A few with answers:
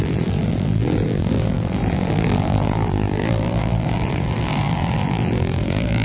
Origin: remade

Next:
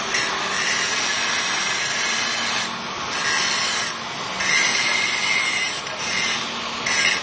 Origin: recorded